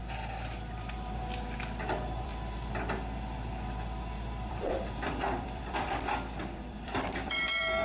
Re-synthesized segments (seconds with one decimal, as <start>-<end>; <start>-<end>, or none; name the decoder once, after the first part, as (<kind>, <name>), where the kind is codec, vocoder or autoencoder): 0.0-2.3 (vocoder, BigVGAN v2); 4.5-7.8

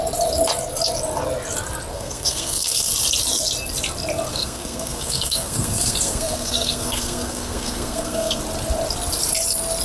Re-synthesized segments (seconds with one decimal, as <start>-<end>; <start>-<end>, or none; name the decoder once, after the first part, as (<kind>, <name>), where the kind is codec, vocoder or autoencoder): 1.9-2.9 (codec, SNAC); 4.3-8.4